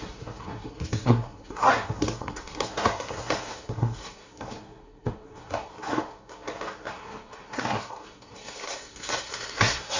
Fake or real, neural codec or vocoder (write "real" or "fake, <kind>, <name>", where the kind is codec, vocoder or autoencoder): fake, codec, SNAC